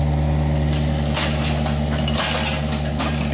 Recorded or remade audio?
recorded